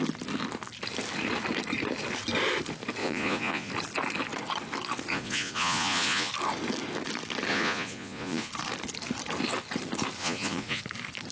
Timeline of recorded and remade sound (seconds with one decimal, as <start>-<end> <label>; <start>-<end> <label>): 0.0-3.0 recorded; 3.0-3.7 remade; 3.7-5.1 recorded; 5.1-6.3 remade; 6.3-7.5 recorded; 7.5-8.5 remade; 8.5-10.2 recorded; 10.2-10.8 remade; 10.8-11.3 recorded